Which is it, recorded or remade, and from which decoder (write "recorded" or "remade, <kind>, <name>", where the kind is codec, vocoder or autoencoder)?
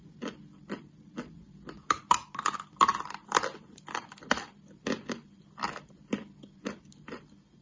recorded